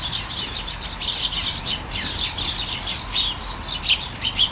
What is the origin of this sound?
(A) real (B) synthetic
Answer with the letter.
A